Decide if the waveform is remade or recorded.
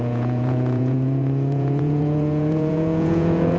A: remade